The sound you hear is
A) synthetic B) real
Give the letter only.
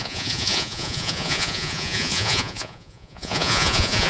A